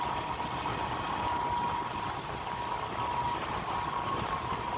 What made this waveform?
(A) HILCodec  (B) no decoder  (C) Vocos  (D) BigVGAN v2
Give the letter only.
B